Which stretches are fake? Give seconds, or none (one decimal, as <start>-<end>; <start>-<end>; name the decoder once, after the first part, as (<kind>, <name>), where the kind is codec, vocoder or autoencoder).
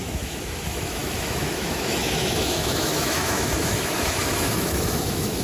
0.0-5.4 (autoencoder, DAC-VAE)